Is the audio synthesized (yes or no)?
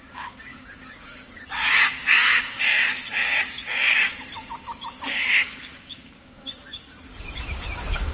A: yes